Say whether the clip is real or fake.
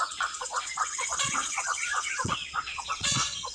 fake